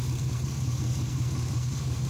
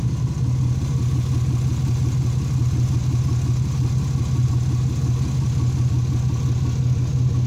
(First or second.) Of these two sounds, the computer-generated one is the first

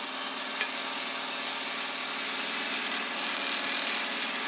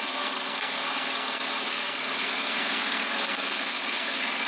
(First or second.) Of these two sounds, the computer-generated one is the second